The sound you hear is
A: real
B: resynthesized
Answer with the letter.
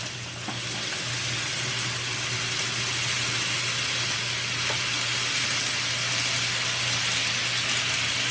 A